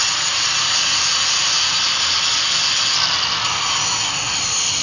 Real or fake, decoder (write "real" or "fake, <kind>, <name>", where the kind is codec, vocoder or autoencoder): real